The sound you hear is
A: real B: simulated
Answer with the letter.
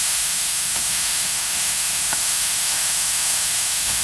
B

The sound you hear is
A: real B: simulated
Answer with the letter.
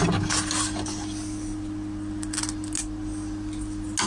A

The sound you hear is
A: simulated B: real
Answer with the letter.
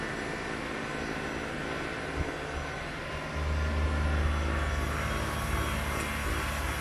B